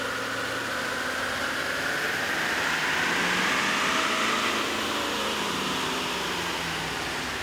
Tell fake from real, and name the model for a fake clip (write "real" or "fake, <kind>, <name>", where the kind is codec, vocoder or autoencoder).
real